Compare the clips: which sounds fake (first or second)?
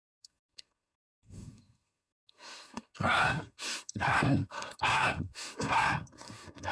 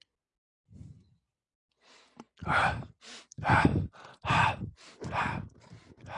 first